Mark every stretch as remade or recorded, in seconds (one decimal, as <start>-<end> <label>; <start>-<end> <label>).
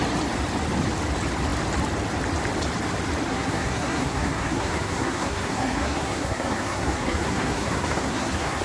0.0-3.3 recorded; 3.3-8.6 remade